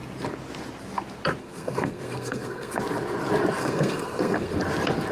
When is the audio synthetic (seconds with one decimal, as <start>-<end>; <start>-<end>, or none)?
1.4-2.8; 3.6-4.6